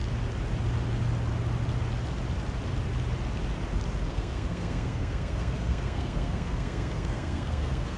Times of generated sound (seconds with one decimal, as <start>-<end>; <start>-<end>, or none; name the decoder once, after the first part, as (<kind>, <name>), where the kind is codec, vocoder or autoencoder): 4.1-8.0 (codec, SNAC)